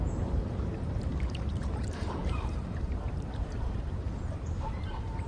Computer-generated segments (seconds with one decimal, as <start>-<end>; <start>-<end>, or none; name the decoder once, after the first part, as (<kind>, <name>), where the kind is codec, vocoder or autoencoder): 0.0-5.3 (vocoder, BigVGAN v2)